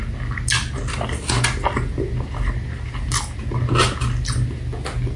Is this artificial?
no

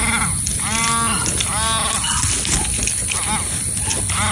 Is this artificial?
no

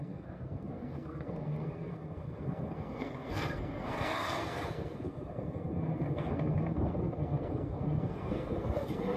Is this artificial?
yes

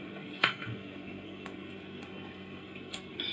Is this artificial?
yes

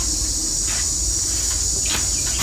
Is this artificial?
no